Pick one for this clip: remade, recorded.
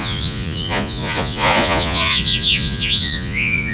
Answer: remade